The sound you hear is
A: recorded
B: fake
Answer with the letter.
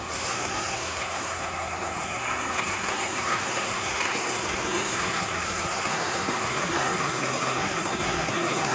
B